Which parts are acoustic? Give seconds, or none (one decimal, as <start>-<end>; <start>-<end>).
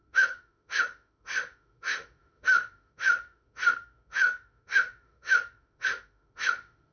none